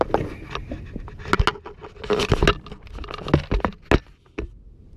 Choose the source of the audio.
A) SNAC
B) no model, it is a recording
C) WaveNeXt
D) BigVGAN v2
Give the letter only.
B